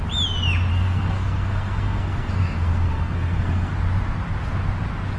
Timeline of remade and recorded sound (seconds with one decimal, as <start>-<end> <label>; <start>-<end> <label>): 0.0-0.7 recorded; 0.7-3.7 remade; 3.7-5.2 recorded